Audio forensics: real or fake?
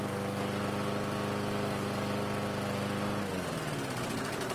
real